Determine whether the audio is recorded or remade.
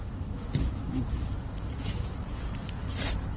remade